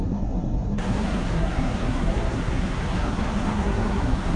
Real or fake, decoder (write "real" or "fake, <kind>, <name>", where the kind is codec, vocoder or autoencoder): fake, codec, SNAC